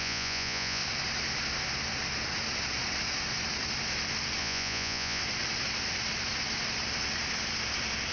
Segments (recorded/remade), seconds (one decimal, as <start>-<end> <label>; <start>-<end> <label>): 0.0-0.8 remade; 0.8-4.4 recorded; 4.4-5.2 remade; 5.2-8.1 recorded